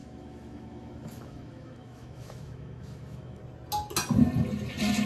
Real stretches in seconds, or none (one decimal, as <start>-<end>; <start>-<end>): 3.4-5.1